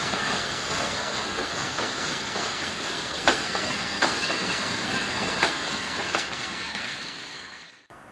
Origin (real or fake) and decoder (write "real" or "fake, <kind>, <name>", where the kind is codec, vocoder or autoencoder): fake, codec, SNAC